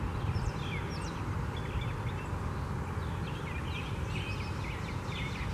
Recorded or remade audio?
recorded